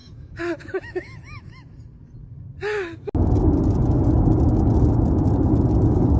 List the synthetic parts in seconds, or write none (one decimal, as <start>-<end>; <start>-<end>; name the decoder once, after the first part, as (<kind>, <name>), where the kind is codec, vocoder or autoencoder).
0.0-1.5 (autoencoder, DAC-VAE)